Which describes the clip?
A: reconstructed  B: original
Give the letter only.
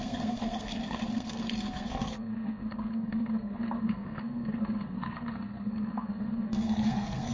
A